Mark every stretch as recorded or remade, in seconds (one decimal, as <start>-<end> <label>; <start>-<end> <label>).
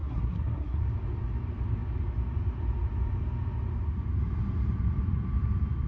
0.0-0.8 remade; 0.8-5.9 recorded